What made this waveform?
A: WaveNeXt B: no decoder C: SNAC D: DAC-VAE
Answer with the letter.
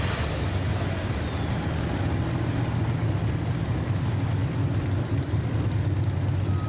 B